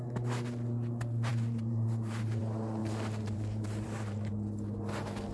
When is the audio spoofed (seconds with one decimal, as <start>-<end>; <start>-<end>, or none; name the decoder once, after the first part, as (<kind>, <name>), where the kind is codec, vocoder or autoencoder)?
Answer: 1.3-2.4 (vocoder, BigVGAN v2); 2.8-4.3